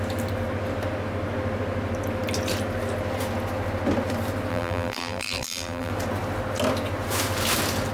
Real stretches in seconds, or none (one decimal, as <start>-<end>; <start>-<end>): 0.0-4.5; 5.9-7.9